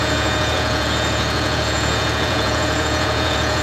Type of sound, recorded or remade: remade